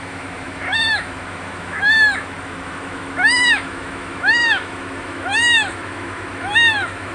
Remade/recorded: remade